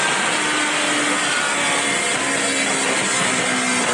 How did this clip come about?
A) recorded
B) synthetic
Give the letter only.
A